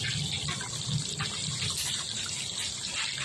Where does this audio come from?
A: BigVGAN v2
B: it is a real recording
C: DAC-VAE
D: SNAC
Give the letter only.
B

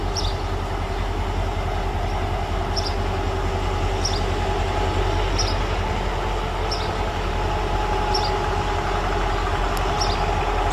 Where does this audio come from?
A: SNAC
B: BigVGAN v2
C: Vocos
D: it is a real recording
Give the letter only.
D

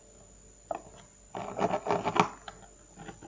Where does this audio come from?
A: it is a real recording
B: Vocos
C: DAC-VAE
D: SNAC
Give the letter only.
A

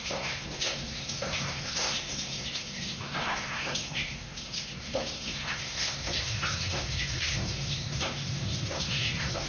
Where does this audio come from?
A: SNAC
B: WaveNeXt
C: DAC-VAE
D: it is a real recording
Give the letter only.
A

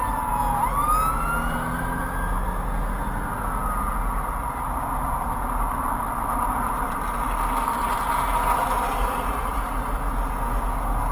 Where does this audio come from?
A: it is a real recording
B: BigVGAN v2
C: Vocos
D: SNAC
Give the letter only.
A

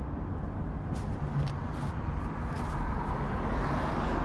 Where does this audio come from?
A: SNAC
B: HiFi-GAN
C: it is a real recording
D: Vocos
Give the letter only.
C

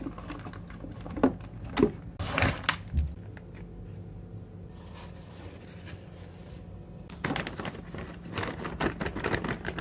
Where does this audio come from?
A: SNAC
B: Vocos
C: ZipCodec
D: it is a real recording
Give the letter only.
D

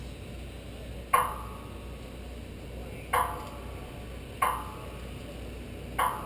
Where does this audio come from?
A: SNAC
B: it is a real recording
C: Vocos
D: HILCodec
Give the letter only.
B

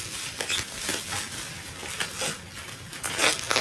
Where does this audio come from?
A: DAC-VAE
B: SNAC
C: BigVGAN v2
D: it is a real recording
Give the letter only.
D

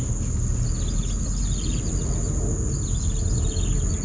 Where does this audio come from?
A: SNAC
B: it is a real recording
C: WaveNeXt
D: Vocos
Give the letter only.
B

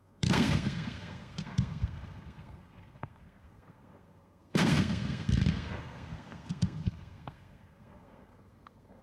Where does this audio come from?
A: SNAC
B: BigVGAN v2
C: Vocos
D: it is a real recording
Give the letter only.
A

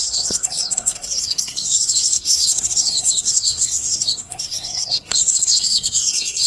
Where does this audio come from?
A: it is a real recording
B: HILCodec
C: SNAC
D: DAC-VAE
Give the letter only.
C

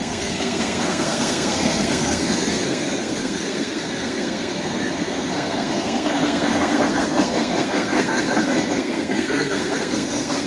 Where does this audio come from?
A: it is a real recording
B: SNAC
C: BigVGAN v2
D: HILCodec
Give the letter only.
B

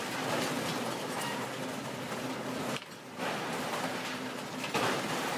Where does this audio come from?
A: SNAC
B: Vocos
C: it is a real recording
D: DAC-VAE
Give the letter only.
C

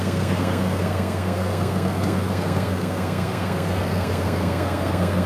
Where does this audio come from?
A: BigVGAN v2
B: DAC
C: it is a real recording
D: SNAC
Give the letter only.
D